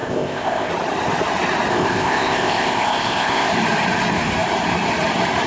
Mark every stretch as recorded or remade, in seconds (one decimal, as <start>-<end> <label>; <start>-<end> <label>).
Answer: 0.0-0.7 remade; 0.7-1.7 recorded; 1.7-3.5 remade; 3.5-5.5 recorded